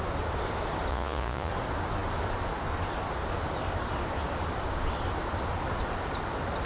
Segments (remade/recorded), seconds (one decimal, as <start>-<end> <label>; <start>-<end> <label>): 0.0-0.9 recorded; 0.9-1.5 remade; 1.5-6.7 recorded